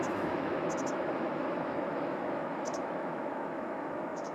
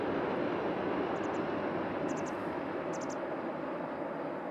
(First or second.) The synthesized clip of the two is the first